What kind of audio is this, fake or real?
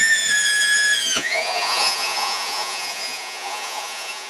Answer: fake